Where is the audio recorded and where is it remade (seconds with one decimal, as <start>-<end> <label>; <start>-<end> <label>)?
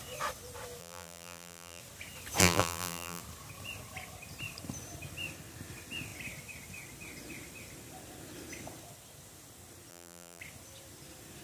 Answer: 0.0-0.8 recorded; 0.8-1.8 remade; 1.8-2.4 recorded; 2.4-3.2 remade; 3.2-9.9 recorded; 9.9-10.4 remade; 10.4-11.4 recorded